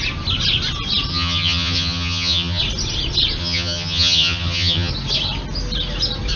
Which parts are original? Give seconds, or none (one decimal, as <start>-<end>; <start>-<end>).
0.0-1.1; 2.6-3.4; 4.9-6.4